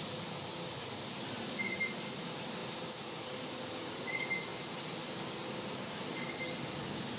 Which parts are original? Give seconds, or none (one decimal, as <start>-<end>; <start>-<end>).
0.0-7.2